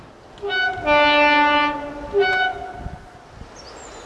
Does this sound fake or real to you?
real